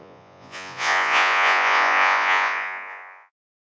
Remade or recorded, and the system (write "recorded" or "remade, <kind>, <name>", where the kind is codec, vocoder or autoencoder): remade, vocoder, Vocos